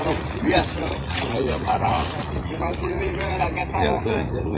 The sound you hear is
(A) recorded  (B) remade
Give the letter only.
B